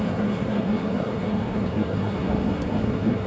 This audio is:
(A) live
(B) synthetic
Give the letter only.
B